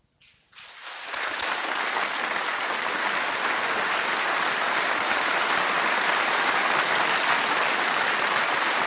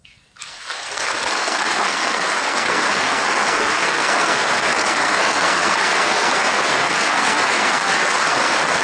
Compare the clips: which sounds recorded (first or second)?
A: first